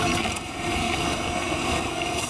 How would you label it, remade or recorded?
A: remade